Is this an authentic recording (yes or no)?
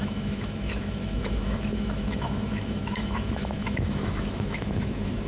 no